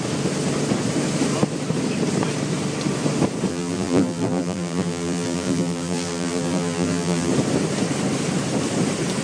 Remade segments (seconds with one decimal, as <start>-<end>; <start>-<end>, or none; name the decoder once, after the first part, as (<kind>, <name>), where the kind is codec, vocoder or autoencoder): 3.5-7.3 (vocoder, BigVGAN v2)